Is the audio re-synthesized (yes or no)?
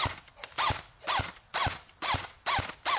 no